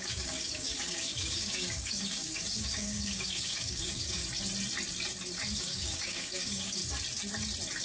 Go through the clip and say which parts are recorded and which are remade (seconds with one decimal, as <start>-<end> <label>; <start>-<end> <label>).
0.0-4.2 remade; 4.2-5.6 recorded; 5.6-6.8 remade; 6.8-7.8 recorded